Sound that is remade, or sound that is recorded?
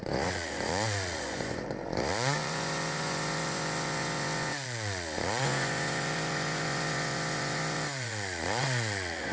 remade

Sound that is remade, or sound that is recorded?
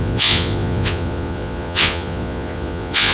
remade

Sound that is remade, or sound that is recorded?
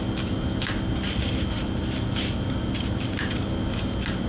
recorded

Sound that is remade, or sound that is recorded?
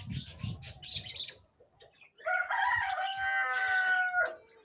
recorded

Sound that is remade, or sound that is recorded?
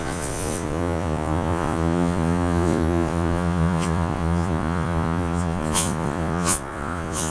remade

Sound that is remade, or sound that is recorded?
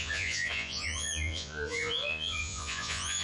remade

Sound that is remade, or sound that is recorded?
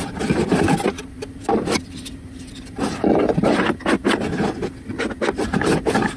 recorded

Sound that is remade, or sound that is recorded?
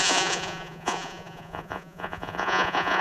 remade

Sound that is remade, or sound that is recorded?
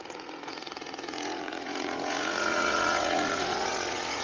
remade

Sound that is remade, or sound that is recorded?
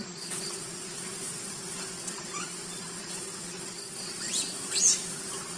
remade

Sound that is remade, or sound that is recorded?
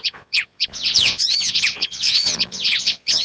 remade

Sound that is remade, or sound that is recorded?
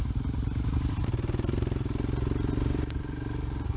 recorded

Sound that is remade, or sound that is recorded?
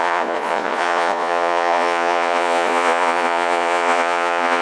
remade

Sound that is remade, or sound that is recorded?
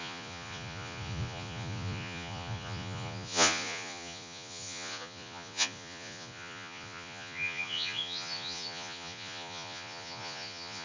remade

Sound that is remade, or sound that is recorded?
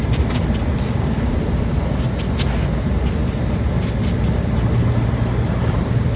recorded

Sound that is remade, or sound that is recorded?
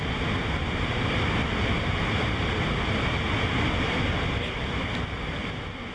recorded